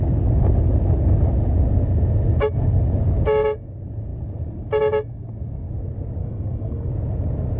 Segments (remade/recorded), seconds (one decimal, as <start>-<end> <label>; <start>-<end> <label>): 0.0-6.2 recorded; 6.2-6.9 remade; 6.9-7.6 recorded